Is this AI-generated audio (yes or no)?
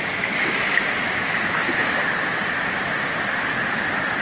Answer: yes